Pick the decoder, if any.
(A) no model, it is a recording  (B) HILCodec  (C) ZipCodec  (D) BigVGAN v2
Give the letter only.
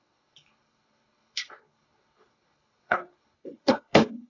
B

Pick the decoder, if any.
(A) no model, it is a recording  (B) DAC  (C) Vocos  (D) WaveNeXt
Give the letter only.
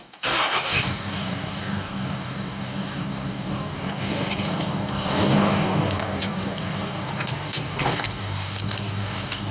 B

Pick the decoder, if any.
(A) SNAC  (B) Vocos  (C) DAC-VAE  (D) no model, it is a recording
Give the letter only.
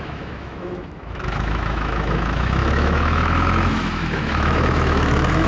C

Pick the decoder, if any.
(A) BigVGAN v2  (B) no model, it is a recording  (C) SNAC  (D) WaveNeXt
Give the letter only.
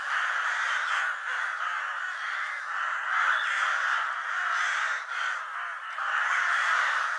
B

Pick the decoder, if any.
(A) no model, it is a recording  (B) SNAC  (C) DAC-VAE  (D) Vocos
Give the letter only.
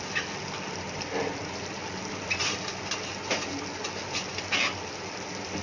A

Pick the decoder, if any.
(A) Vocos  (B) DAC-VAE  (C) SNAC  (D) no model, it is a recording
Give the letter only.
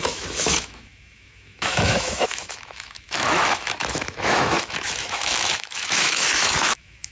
B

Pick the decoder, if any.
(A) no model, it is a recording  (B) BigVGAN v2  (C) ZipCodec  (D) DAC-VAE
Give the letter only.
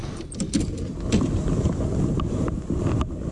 A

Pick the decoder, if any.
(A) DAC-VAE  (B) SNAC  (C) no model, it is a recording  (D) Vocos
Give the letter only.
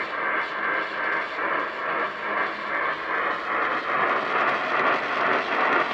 C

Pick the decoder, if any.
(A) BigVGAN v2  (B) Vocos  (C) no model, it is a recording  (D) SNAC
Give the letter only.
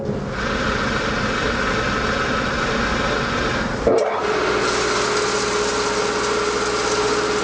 C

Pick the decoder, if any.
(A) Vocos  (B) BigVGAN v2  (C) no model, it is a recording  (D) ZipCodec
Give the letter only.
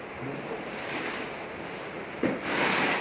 C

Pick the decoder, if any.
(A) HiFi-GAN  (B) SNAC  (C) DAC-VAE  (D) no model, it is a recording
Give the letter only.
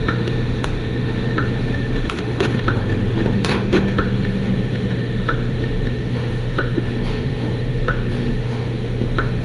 C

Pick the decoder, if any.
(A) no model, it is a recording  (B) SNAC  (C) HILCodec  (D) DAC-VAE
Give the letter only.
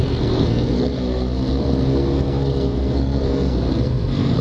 B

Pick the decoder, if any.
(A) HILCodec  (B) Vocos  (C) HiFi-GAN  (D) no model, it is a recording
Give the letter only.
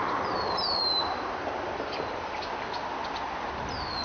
D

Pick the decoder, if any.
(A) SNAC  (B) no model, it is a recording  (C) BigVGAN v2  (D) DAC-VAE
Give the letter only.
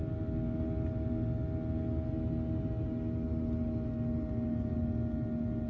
B